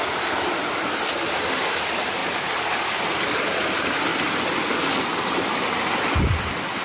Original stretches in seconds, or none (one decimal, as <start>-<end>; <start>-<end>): 0.0-6.8